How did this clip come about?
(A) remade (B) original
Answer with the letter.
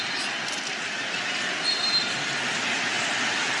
B